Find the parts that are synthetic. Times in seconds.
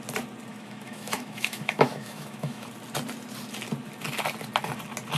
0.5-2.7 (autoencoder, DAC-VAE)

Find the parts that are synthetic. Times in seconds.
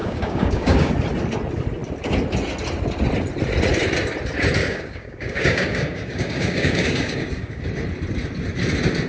0.0-0.9 (codec, DAC); 4.6-7.6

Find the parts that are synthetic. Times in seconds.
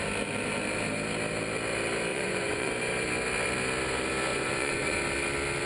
2.1-2.7 (vocoder, Vocos); 4.3-5.0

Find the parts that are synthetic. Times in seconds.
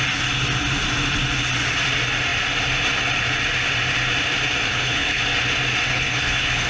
4.7-5.2 (codec, HILCodec); 5.9-6.7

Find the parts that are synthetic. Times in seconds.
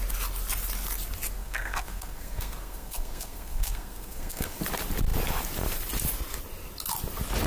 1.4-4.6 (codec, SNAC)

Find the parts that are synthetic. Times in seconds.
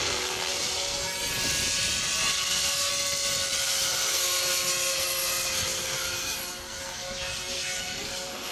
0.0-1.3 (codec, SNAC); 2.3-2.9; 3.6-8.5